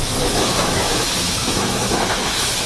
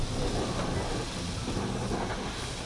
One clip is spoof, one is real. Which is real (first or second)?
second